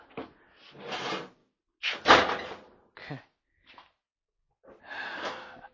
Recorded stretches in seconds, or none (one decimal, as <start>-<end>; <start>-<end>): 0.0-5.7